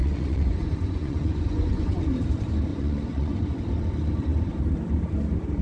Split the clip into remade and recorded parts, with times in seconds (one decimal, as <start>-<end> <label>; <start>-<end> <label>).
0.0-2.0 remade; 2.0-2.7 recorded; 2.7-3.4 remade; 3.4-5.6 recorded